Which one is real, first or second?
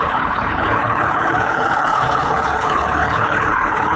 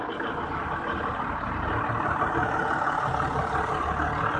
second